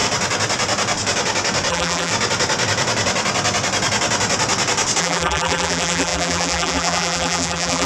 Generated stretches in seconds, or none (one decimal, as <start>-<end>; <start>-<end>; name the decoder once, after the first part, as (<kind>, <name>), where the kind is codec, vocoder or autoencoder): 1.7-2.1 (vocoder, BigVGAN v2); 5.0-7.9